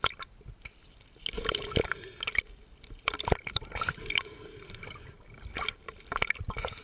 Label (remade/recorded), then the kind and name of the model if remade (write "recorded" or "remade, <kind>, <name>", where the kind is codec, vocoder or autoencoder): recorded